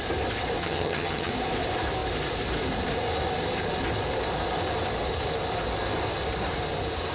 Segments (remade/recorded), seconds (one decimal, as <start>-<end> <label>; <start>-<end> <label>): 0.0-0.6 recorded; 0.6-1.3 remade; 1.3-7.1 recorded